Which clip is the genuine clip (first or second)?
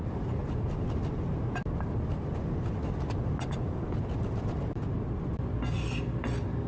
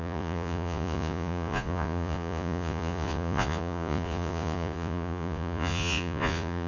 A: first